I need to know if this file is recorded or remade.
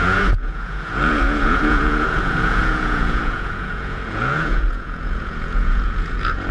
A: remade